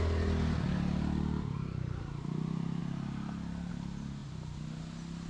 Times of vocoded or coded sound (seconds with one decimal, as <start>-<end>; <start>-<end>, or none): none